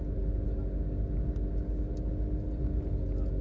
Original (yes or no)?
yes